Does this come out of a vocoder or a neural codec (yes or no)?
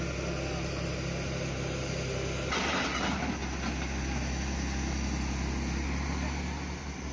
no